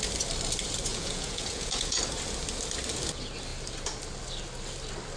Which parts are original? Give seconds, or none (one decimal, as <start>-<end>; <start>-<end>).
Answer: 0.0-0.9; 2.0-5.2